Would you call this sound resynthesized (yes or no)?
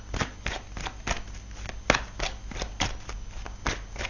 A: no